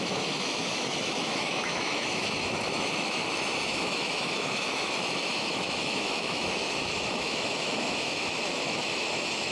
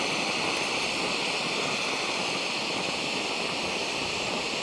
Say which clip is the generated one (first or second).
first